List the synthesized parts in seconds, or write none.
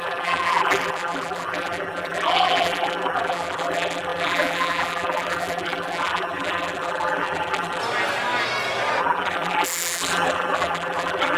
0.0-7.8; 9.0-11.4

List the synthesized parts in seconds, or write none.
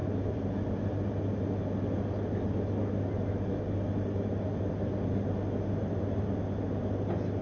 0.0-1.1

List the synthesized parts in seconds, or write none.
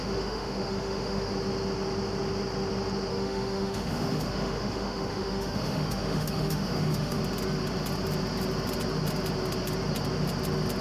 0.0-1.3; 3.1-7.2